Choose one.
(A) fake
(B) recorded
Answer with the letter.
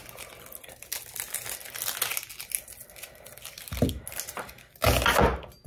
B